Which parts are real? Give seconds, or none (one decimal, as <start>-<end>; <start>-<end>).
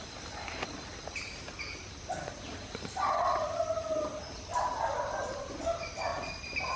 0.0-6.8